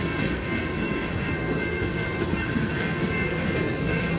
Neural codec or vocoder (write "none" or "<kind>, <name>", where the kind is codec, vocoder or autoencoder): codec, SNAC